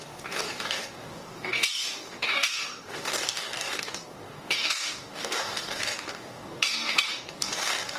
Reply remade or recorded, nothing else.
remade